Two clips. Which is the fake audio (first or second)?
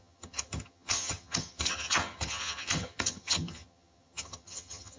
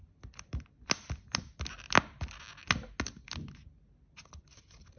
first